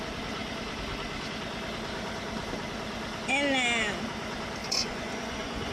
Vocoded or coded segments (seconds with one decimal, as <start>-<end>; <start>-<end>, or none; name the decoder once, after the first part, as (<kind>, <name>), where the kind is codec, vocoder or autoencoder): 4.6-5.7 (vocoder, Vocos)